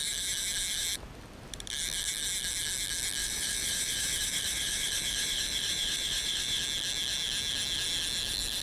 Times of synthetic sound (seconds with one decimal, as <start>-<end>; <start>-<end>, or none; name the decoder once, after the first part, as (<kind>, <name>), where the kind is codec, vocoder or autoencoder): 3.2-6.6 (vocoder, BigVGAN v2)